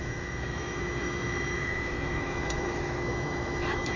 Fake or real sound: fake